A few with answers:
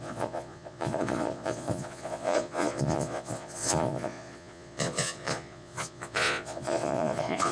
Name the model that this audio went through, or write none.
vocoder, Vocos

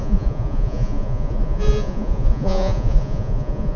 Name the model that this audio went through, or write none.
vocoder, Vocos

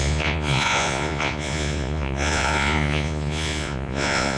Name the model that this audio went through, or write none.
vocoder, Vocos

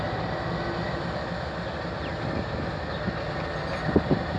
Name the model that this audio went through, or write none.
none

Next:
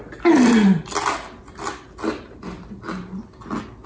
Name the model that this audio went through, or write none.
none